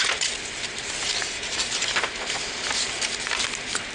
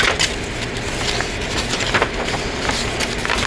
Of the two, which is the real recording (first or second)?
second